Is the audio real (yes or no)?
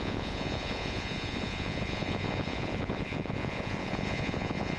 no